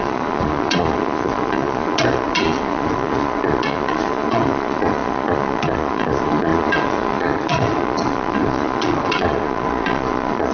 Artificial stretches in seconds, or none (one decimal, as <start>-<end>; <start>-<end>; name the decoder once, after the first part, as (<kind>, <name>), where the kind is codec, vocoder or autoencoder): 0.0-10.5 (vocoder, Vocos)